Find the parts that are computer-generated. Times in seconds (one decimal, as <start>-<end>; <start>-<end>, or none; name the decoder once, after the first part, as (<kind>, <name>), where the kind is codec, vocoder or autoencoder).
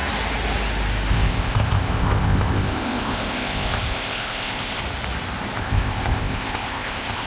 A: 1.1-4.8 (codec, ZipCodec); 5.6-7.3